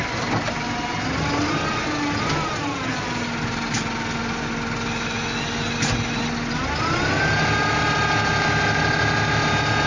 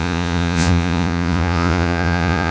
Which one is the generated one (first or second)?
second